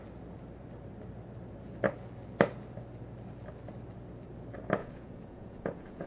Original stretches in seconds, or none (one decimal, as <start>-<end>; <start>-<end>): 0.0-4.8